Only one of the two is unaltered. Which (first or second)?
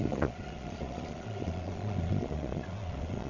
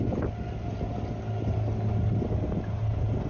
second